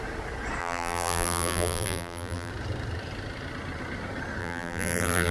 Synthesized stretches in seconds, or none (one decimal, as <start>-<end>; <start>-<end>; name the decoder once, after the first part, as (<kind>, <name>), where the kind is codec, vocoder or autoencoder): 0.6-2.5 (vocoder, BigVGAN v2); 4.4-5.3